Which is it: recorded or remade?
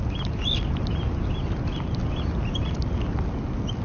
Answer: recorded